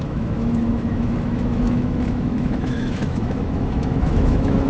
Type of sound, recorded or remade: remade